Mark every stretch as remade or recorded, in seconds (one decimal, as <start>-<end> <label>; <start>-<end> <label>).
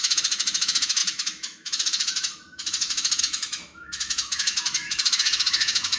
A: 0.0-6.0 remade